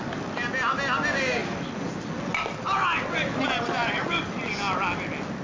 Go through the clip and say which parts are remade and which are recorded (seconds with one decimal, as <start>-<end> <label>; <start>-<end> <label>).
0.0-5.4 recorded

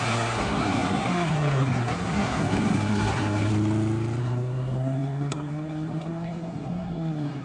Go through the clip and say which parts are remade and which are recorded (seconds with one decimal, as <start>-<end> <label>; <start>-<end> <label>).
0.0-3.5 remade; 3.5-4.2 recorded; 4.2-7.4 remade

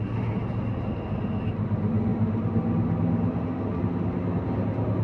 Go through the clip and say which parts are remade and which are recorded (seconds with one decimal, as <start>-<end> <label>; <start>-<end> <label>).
0.0-5.0 recorded